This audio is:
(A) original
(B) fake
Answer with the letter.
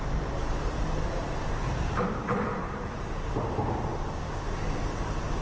B